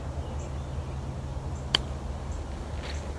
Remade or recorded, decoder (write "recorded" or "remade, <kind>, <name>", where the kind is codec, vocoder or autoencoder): recorded